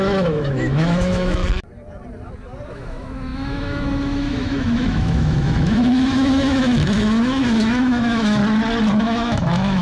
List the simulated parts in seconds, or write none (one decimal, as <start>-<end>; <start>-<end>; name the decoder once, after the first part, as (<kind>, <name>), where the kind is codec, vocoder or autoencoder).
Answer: 0.0-1.4 (autoencoder, DAC-VAE); 2.7-8.4; 9.0-9.8